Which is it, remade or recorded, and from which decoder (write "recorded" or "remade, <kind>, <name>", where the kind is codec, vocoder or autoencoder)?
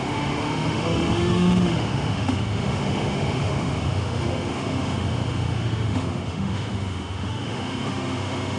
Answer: remade, autoencoder, DAC-VAE